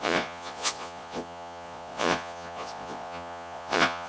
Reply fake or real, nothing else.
fake